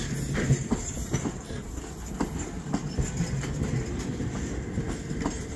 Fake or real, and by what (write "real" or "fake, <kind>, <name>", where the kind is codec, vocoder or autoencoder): real